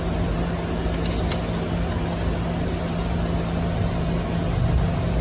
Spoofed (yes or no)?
no